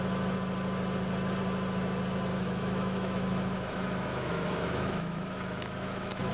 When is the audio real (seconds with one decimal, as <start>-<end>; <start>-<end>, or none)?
0.0-2.3